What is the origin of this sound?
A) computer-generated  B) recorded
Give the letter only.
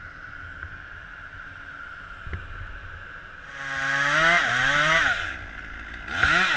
B